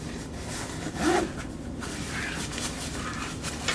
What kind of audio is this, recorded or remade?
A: recorded